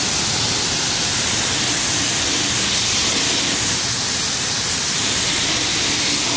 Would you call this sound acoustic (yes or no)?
yes